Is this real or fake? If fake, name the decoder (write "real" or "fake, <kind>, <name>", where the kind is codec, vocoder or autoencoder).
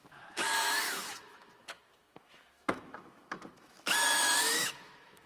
fake, autoencoder, DAC-VAE